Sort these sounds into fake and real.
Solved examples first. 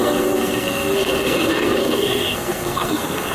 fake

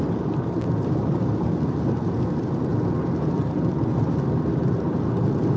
real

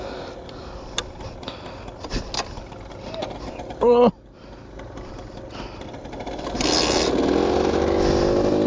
real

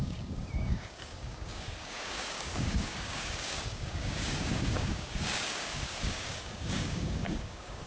fake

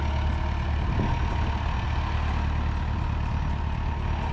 real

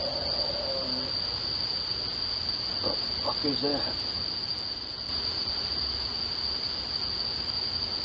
real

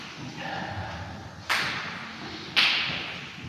real